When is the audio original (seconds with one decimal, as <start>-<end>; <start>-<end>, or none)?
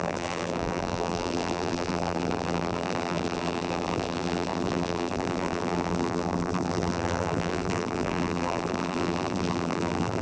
none